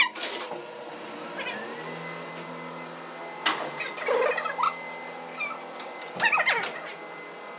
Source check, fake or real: real